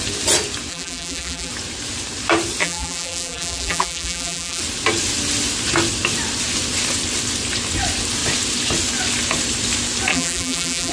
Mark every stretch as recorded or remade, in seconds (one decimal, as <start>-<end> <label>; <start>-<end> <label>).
0.0-0.7 recorded; 0.7-1.5 remade; 1.5-2.6 recorded; 2.6-4.6 remade; 4.6-10.1 recorded; 10.1-10.9 remade